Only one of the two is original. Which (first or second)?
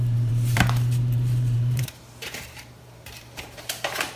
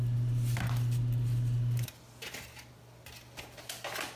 second